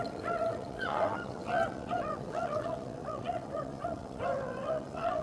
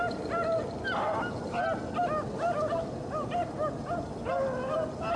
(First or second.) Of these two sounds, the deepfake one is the first